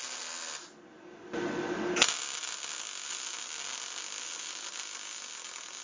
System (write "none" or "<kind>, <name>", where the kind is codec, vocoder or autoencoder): none